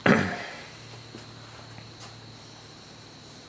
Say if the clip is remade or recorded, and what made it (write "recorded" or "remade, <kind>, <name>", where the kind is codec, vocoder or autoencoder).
recorded